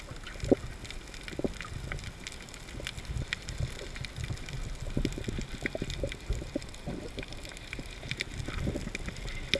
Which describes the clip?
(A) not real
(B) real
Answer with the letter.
B